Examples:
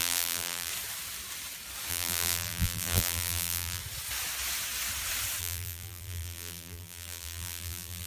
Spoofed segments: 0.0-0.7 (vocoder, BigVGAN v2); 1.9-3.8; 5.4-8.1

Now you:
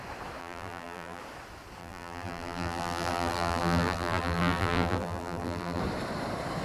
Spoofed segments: 0.4-1.2 (vocoder, BigVGAN v2); 1.8-5.8